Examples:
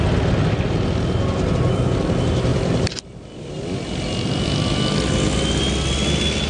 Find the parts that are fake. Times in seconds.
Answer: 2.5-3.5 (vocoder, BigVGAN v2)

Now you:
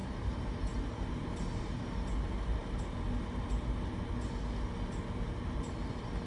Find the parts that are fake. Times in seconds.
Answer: 0.0-1.1 (vocoder, BigVGAN v2)

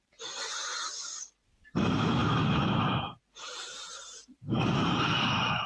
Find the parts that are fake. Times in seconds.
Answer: 0.0-0.7 (vocoder, BigVGAN v2); 1.8-5.7

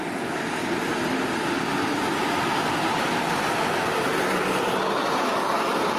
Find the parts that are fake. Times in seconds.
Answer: 0.0-2.2 (vocoder, BigVGAN v2); 3.8-6.0

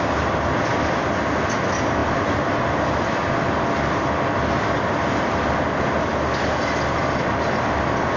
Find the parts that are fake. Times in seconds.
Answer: none

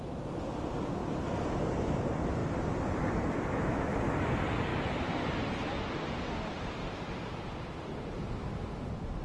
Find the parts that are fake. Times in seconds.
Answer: none

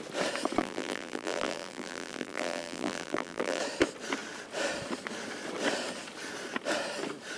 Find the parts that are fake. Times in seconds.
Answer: 0.6-3.6 (vocoder, BigVGAN v2)

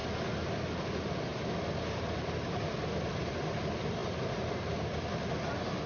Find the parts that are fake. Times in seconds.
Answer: 0.6-1.3 (vocoder, BigVGAN v2); 2.8-5.9